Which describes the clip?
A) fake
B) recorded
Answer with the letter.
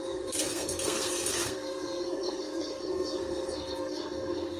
A